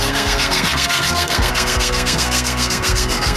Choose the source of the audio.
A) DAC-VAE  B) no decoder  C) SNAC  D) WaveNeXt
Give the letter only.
C